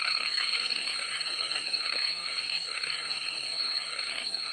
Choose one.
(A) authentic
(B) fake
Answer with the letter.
B